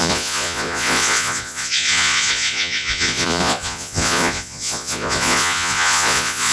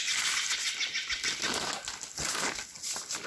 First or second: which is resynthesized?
first